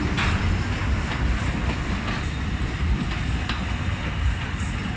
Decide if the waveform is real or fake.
real